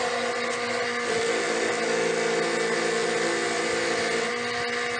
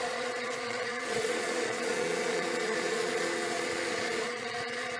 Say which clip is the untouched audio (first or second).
first